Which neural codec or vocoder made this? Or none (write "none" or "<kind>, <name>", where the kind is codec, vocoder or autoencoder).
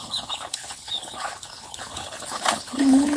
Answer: codec, HILCodec